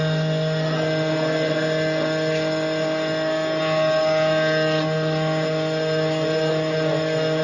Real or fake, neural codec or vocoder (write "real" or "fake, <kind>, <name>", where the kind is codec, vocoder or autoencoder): real